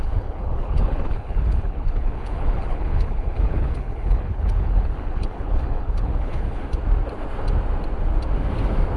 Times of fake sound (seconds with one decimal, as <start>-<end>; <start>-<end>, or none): 0.0-6.6